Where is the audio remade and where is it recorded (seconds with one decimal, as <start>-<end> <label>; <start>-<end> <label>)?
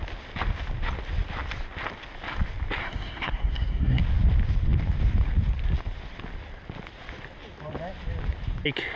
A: 0.0-2.8 recorded; 2.8-4.0 remade; 4.0-9.0 recorded